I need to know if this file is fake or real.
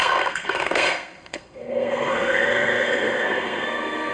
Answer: fake